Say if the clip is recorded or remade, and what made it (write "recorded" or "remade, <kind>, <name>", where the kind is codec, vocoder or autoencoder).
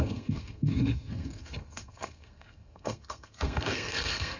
remade, codec, SNAC